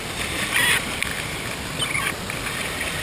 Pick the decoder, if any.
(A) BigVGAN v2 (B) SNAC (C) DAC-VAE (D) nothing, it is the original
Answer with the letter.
D